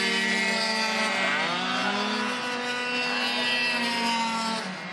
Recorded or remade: recorded